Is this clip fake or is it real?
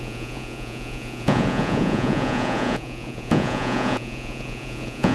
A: fake